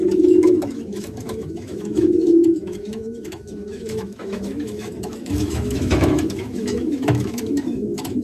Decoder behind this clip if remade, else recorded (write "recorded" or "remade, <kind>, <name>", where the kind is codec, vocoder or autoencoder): remade, autoencoder, DAC-VAE